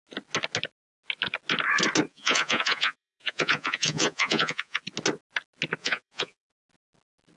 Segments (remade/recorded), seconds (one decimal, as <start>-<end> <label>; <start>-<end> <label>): 0.0-2.1 recorded; 2.1-4.8 remade; 4.8-5.8 recorded; 5.8-6.7 remade; 6.7-7.4 recorded